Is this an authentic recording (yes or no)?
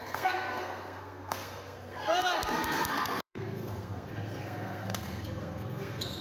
no